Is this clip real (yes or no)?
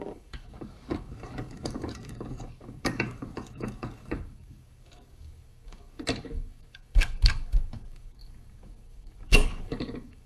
no